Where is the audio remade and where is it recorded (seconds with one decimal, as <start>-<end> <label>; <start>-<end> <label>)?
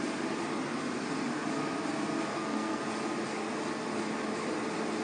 0.0-2.3 recorded; 2.3-2.8 remade; 2.8-5.0 recorded